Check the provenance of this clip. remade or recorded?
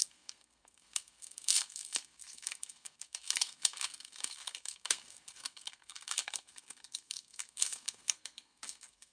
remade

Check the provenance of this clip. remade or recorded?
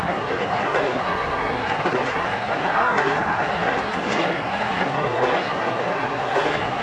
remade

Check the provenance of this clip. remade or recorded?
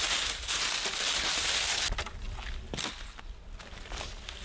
recorded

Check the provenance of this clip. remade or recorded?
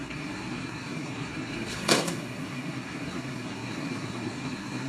remade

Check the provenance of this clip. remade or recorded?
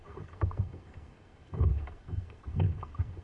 remade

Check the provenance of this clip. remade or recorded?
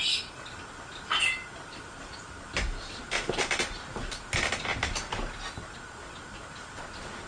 recorded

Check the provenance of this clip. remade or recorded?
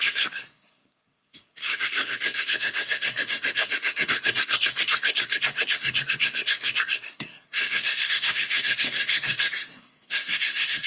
remade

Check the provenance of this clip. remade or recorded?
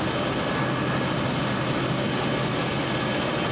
recorded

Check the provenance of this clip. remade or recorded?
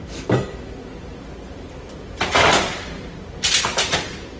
recorded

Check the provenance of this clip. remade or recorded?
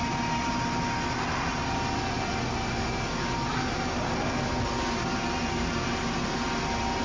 recorded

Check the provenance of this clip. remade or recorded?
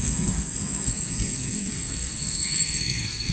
remade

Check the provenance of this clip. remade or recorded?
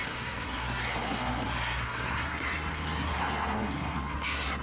remade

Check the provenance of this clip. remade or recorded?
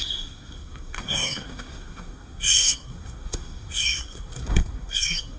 remade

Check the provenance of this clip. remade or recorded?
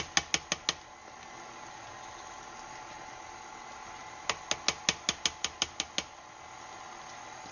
recorded